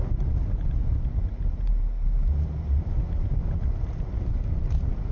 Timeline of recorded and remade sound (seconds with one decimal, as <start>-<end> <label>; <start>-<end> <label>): 0.0-5.1 recorded